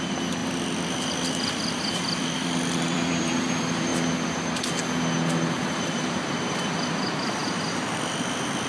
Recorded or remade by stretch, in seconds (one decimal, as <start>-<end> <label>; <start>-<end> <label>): 0.0-0.4 remade; 0.4-1.3 recorded; 1.3-3.9 remade; 3.9-5.5 recorded; 5.5-7.4 remade; 7.4-8.7 recorded